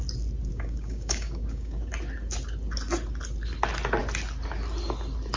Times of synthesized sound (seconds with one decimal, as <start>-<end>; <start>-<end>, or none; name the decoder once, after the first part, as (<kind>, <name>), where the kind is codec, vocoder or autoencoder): 0.5-1.9 (codec, DAC)